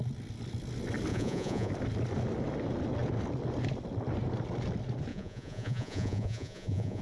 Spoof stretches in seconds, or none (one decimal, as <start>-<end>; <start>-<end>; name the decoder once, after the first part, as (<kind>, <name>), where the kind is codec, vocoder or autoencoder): 1.1-1.7 (vocoder, Vocos); 5.1-7.0